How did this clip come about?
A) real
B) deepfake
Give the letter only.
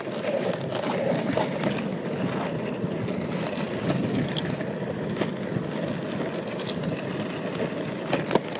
A